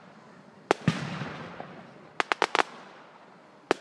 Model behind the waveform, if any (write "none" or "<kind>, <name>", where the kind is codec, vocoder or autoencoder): none